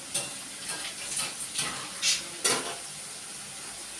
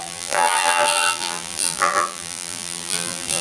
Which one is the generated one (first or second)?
second